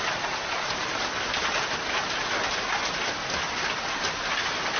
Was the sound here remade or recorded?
recorded